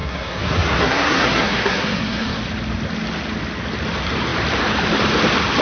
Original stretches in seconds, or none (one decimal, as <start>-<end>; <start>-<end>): 2.4-5.6